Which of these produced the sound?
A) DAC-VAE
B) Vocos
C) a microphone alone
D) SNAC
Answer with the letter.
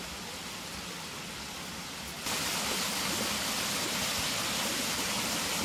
C